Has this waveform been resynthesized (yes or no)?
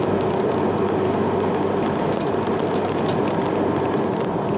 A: no